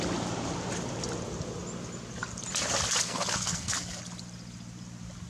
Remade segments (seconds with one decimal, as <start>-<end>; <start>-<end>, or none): 3.0-4.0